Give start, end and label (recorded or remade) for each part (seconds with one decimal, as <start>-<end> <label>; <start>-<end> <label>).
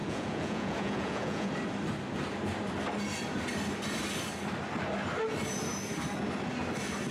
0.0-1.5 remade; 1.5-7.1 recorded